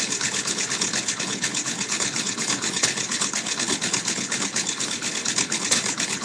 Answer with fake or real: fake